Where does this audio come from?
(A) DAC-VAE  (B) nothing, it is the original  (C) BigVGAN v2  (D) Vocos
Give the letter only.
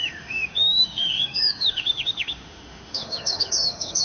A